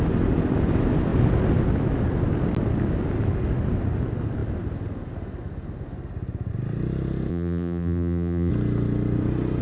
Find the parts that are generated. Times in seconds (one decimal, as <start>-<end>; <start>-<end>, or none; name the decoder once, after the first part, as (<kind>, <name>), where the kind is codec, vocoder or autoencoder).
7.3-8.5 (vocoder, BigVGAN v2)